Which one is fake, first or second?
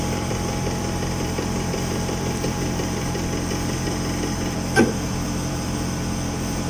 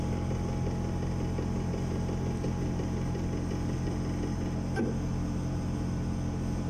first